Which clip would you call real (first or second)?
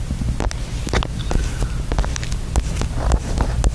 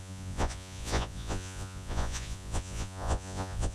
first